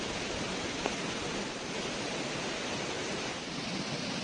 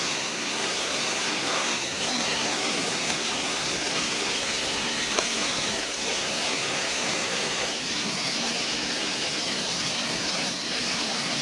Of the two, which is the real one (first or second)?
first